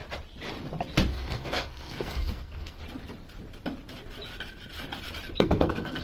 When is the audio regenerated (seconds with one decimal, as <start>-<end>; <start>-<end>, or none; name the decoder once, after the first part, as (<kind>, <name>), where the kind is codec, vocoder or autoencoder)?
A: 1.1-2.8 (codec, SNAC); 5.4-6.0